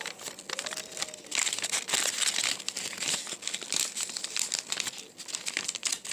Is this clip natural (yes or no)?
yes